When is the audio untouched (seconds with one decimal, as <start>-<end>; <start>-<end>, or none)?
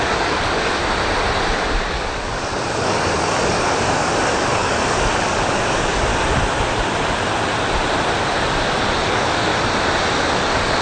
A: 0.8-1.7; 6.1-9.1; 9.5-10.2